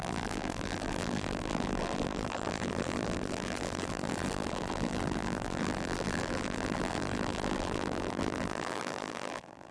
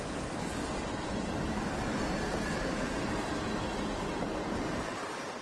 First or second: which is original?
second